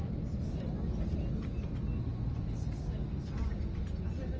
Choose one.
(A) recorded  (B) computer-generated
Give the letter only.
A